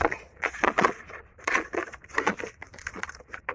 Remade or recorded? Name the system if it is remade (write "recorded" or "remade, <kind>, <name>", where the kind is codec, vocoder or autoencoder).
remade, vocoder, Vocos